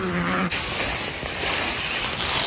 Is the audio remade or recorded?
recorded